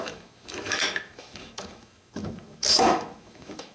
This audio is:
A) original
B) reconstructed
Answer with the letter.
B